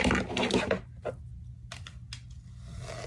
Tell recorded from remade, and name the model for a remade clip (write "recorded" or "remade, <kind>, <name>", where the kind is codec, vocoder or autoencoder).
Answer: recorded